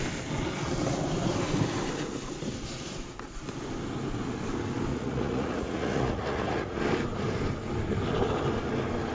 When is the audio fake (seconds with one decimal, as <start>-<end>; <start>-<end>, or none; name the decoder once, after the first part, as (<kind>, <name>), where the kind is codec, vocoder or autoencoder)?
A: 4.9-6.8 (vocoder, Vocos)